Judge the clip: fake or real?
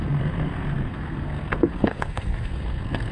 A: fake